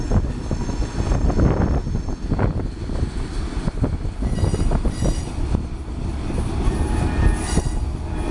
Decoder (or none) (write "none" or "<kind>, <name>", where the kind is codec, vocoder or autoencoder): none